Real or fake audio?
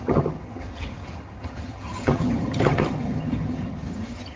fake